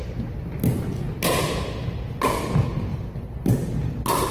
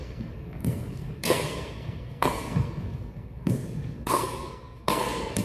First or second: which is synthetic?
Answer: second